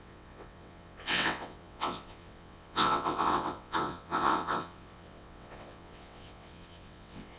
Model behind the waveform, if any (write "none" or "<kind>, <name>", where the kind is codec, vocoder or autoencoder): vocoder, WaveNeXt